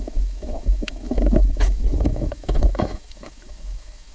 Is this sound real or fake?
fake